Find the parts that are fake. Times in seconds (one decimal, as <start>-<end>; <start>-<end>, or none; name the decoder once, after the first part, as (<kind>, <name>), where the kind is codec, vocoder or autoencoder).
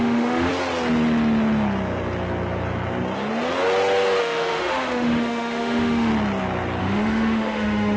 0.0-0.5 (autoencoder, DAC-VAE); 4.2-6.1; 6.8-8.0